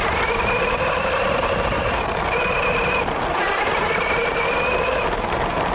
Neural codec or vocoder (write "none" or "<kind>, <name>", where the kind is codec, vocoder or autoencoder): none